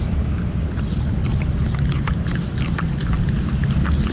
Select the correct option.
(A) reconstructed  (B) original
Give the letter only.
B